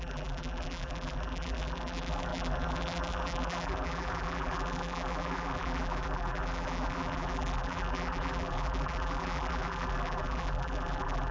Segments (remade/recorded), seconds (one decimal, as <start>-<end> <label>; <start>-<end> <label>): 0.0-11.3 remade